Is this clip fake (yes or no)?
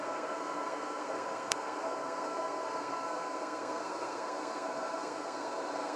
yes